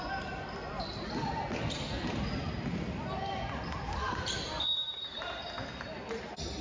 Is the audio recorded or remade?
recorded